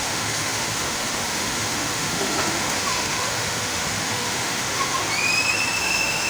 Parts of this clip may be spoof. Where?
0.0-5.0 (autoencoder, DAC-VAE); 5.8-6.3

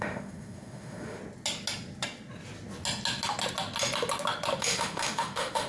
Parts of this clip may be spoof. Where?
0.0-1.2 (autoencoder, DAC-VAE); 4.6-5.7

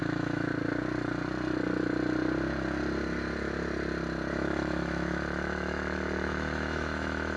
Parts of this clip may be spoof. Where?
0.0-0.5 (autoencoder, DAC-VAE); 4.3-7.4

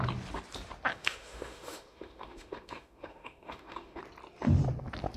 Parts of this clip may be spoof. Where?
0.9-4.0 (autoencoder, DAC-VAE)